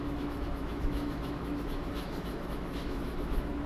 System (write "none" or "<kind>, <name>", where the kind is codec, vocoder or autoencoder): autoencoder, DAC-VAE